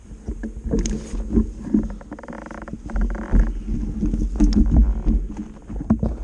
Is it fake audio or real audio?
real